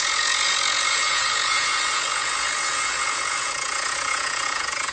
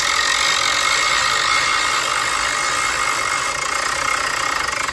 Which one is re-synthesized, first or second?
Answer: first